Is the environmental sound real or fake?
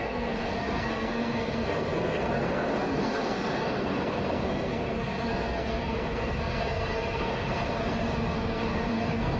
fake